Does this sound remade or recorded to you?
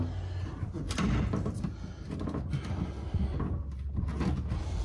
recorded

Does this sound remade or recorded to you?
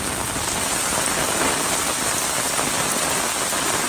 recorded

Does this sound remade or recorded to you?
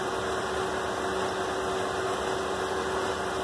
recorded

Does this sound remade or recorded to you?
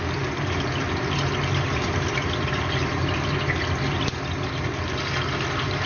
recorded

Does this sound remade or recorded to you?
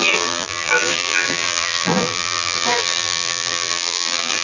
remade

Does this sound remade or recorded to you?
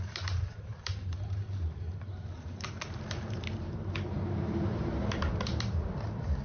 remade